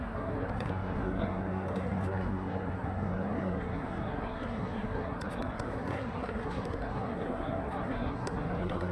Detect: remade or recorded remade